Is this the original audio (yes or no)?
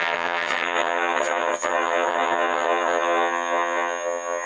no